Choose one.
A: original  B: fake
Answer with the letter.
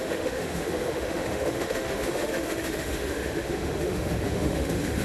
B